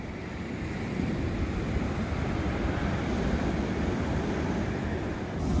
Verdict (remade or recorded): recorded